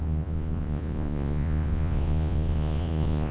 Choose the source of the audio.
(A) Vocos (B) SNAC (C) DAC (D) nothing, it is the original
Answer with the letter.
A